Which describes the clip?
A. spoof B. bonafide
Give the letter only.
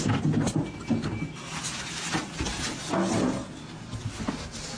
B